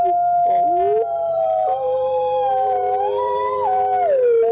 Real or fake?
real